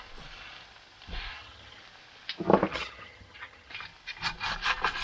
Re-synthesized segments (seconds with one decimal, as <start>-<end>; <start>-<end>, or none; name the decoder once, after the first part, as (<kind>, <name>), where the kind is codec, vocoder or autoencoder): 1.3-1.8 (vocoder, HiFi-GAN); 2.7-3.7